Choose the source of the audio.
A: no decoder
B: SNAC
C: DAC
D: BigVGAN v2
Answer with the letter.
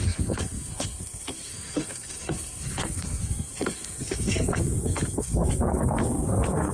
B